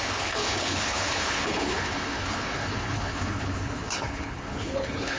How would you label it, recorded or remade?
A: remade